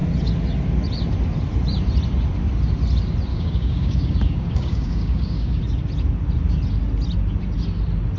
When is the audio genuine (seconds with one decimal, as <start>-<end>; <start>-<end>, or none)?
0.0-3.3; 5.6-8.2